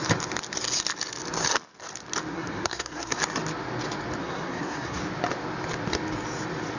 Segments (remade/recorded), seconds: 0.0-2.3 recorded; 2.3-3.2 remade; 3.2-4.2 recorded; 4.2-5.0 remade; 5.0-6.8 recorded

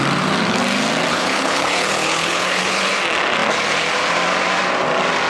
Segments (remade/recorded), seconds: 0.0-1.1 recorded; 1.1-2.9 remade; 2.9-5.3 recorded

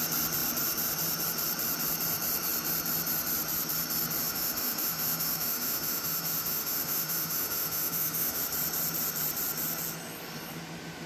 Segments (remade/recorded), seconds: 0.0-4.2 recorded; 4.2-8.4 remade; 8.4-11.1 recorded

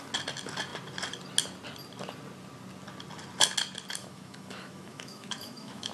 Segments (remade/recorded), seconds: 0.0-4.0 recorded; 4.0-5.9 remade

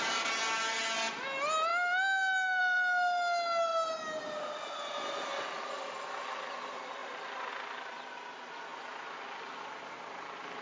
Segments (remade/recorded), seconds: 0.0-10.6 recorded

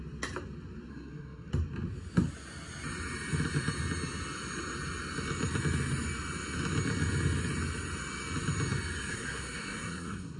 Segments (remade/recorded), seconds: 0.0-0.9 recorded; 0.9-1.5 remade; 1.5-9.1 recorded; 9.1-10.4 remade